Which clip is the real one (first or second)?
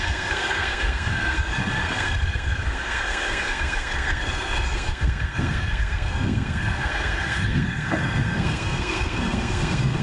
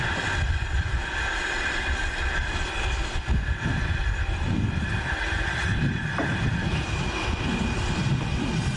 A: second